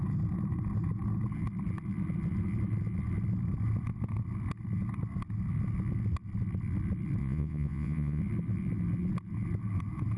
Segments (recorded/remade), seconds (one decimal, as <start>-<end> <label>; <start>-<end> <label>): 0.0-7.2 recorded; 7.2-8.2 remade; 8.2-10.2 recorded